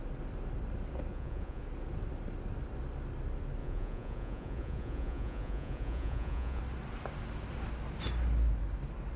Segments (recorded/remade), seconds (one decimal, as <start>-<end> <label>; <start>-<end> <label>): 0.0-1.1 recorded; 1.1-1.6 remade; 1.6-3.6 recorded; 3.6-6.6 remade; 6.6-9.2 recorded

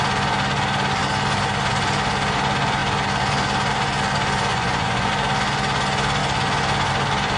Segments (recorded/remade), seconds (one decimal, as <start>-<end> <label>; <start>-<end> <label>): 0.0-4.5 recorded; 4.5-5.1 remade; 5.1-7.4 recorded

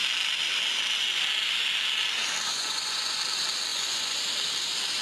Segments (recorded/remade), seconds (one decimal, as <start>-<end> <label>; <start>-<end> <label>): 0.0-2.5 recorded; 2.5-3.2 remade; 3.2-3.7 recorded; 3.7-4.2 remade; 4.2-5.0 recorded

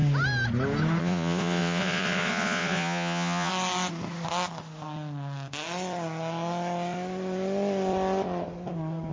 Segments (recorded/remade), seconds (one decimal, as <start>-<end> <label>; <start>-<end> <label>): 0.0-1.0 recorded; 1.0-3.5 remade; 3.5-9.1 recorded

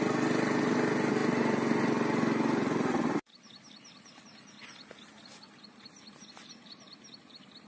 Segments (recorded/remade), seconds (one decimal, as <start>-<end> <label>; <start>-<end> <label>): 0.0-7.7 recorded